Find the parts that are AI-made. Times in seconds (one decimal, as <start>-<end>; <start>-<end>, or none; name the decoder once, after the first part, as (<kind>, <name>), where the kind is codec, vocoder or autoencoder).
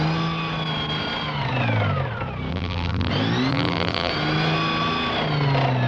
2.5-3.1 (vocoder, BigVGAN v2); 3.5-4.1